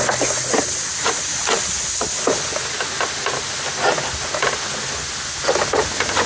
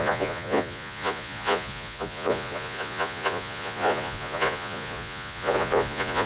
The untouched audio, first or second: first